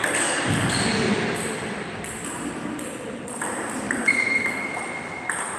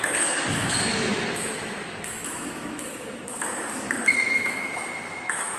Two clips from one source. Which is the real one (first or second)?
first